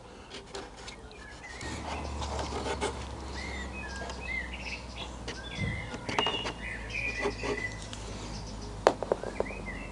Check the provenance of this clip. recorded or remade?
recorded